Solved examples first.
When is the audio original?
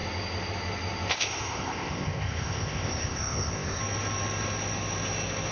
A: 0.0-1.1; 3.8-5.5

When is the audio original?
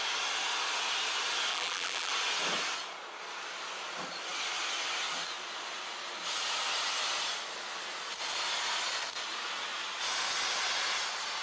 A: 0.0-1.5; 2.1-11.4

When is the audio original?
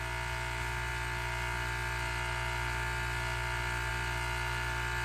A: 0.0-5.0